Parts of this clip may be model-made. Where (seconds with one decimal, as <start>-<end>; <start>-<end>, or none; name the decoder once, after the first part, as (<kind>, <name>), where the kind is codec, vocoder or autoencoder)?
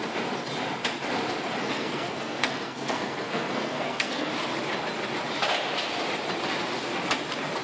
1.6-4.3 (codec, SNAC)